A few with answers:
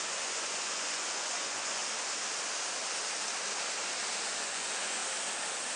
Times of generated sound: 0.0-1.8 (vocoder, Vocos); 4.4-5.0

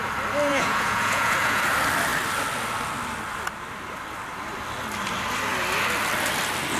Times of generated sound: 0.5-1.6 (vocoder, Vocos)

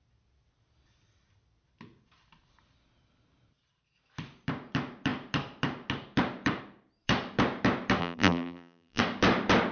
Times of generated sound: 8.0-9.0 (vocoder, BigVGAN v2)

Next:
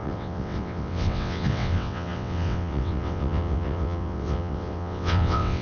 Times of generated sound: 0.0-5.6 (vocoder, WaveNeXt)